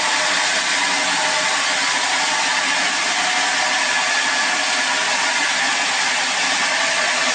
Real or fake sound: real